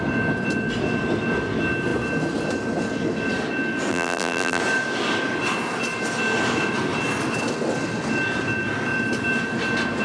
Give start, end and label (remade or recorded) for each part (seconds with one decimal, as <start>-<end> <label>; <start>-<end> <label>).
0.0-3.9 recorded; 3.9-4.6 remade; 4.6-10.0 recorded